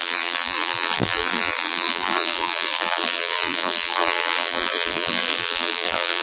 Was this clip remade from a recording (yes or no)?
yes